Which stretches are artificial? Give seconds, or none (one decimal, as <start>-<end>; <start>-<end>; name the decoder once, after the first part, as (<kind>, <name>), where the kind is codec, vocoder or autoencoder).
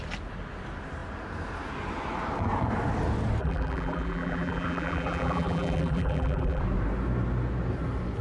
3.4-6.6 (vocoder, BigVGAN v2)